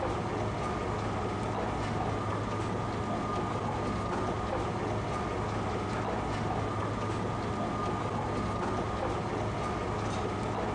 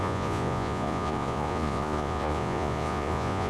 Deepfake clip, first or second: second